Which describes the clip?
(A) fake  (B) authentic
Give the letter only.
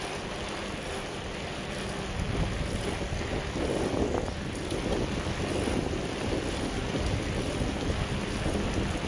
B